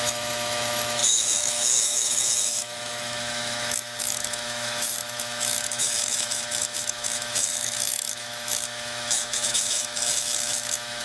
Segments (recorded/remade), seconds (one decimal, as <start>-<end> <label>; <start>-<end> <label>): 0.0-11.0 remade